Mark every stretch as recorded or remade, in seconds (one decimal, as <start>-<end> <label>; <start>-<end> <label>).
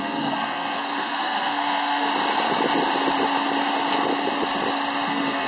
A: 0.0-2.1 remade; 2.1-5.1 recorded; 5.1-5.5 remade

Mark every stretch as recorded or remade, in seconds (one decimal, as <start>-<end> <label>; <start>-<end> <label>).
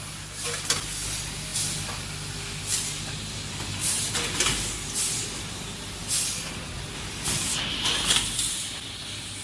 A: 0.0-9.4 recorded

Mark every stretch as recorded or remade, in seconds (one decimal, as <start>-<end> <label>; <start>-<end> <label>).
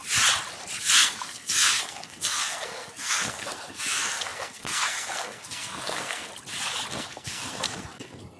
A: 0.0-0.8 recorded; 0.8-6.3 remade; 6.3-6.9 recorded; 6.9-8.4 remade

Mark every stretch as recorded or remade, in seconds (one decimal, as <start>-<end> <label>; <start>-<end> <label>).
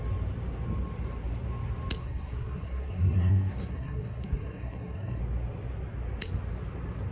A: 0.0-2.0 recorded; 2.0-5.2 remade; 5.2-7.1 recorded